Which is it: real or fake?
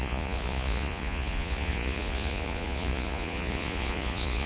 fake